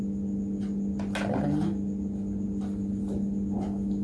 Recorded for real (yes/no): yes